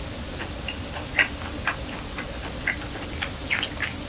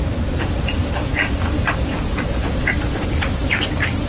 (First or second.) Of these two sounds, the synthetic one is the second